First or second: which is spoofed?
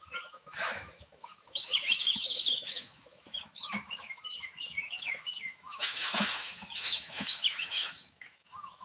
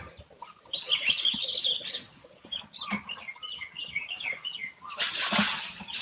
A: first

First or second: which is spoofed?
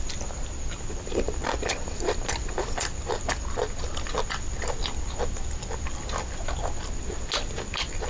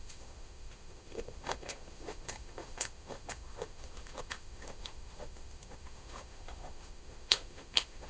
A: second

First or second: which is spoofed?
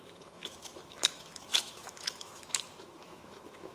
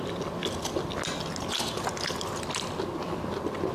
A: first